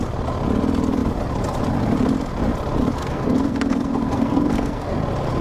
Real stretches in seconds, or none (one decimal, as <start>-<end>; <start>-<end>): 0.0-3.0; 4.9-5.4